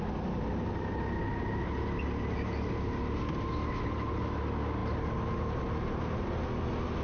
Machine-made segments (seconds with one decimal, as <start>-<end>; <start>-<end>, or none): none

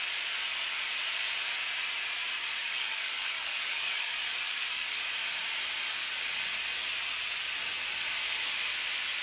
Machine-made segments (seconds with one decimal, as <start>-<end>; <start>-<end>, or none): 2.6-5.0

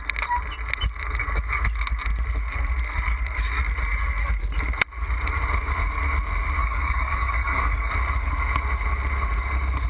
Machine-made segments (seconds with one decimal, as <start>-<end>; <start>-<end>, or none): 6.6-7.9

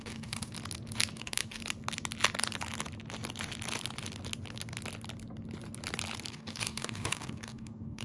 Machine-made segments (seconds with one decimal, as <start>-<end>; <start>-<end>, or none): 0.0-0.5; 1.1-1.6; 6.3-8.0

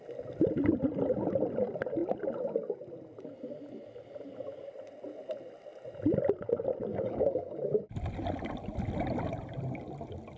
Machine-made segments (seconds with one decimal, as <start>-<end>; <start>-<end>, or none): 6.9-7.8

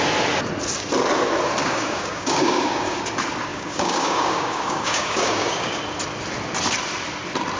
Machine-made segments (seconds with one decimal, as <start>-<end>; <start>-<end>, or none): 1.6-3.0; 3.5-5.8

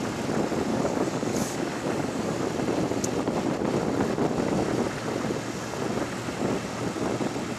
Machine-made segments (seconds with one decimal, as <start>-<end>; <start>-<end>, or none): 0.7-2.4

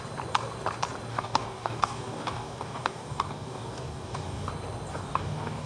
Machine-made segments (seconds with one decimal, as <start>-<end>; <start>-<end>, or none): 1.1-4.5; 4.9-5.7